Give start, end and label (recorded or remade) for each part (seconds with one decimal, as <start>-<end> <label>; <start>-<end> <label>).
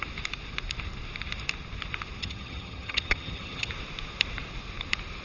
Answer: 0.0-2.2 recorded; 2.2-3.7 remade; 3.7-5.2 recorded